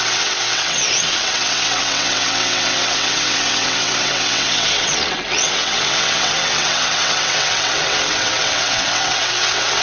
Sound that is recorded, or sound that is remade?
remade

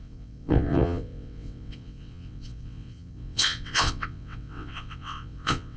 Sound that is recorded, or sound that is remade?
remade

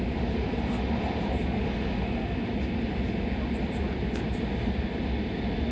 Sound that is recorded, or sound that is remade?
recorded